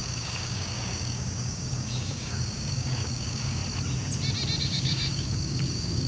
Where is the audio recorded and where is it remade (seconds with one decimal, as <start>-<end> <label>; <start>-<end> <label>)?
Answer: 0.0-3.6 remade; 3.6-4.6 recorded; 4.6-6.1 remade